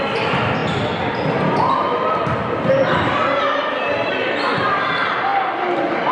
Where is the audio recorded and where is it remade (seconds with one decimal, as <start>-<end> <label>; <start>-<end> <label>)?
0.0-6.1 recorded